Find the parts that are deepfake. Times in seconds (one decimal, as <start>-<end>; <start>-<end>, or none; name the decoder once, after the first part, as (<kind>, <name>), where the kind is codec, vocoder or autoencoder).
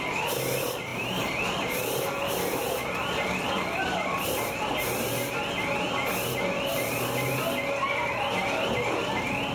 0.9-2.1 (vocoder, BigVGAN v2)